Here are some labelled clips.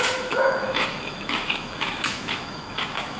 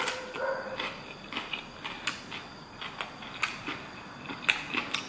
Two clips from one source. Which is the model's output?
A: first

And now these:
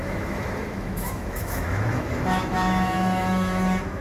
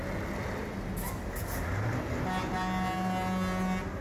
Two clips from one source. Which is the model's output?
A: first